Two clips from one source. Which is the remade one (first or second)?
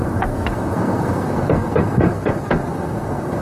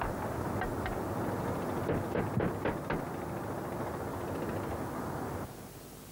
first